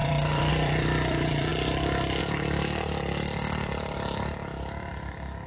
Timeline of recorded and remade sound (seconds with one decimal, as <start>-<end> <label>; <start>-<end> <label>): 0.0-5.5 remade